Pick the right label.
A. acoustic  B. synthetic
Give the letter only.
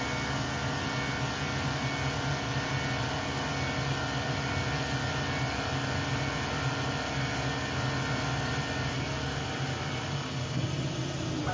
A